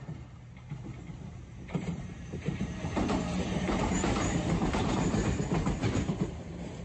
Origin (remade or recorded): remade